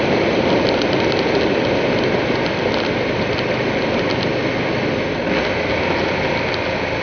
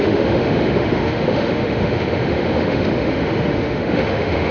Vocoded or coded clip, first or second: second